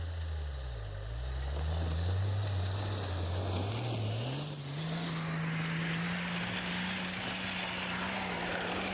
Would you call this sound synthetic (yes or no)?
no